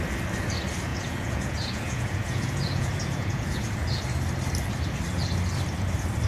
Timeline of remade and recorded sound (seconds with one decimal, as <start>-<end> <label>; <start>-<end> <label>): 0.0-0.9 recorded; 0.9-4.0 remade; 4.0-6.3 recorded